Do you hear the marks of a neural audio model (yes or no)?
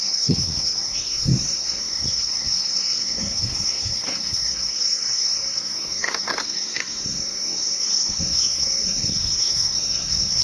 yes